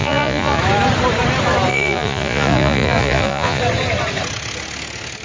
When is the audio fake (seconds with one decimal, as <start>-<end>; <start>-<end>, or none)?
0.0-0.6; 1.7-3.6